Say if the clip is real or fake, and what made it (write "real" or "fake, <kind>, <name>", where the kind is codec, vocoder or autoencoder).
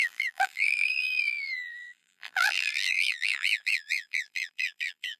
fake, vocoder, BigVGAN v2